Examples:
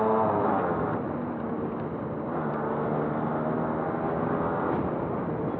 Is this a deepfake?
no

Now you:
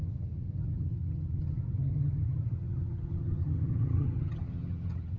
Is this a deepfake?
yes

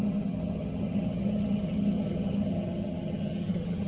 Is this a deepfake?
yes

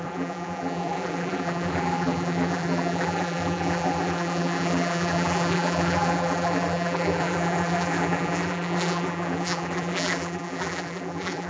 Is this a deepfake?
yes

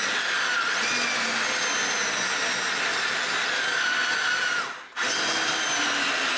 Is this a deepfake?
no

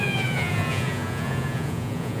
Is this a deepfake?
yes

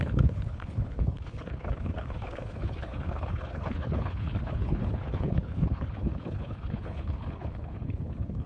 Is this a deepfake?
yes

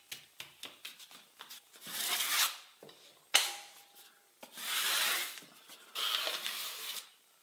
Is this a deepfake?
no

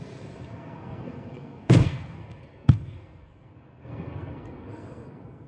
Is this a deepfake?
yes